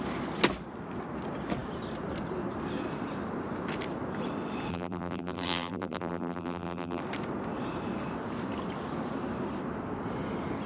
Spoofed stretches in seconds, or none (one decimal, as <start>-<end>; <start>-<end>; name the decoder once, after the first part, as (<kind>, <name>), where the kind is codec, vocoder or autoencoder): 4.7-7.0 (vocoder, BigVGAN v2)